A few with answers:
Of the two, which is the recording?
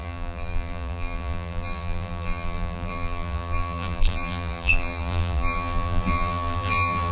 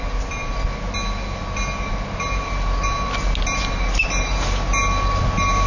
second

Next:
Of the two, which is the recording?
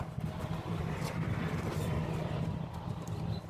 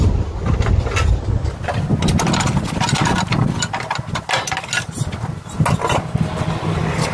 second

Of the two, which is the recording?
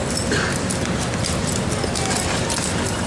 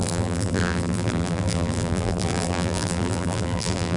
first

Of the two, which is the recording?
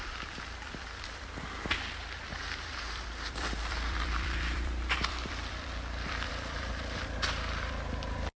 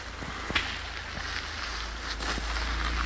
second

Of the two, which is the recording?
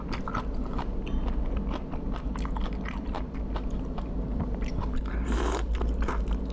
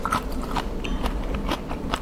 first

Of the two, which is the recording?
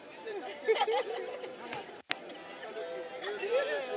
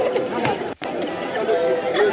first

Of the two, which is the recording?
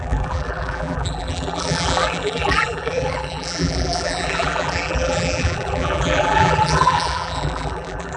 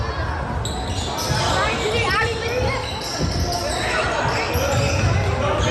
second